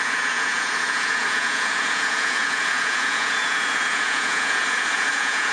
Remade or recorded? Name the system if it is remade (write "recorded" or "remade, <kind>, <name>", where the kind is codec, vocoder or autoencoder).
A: remade, vocoder, Vocos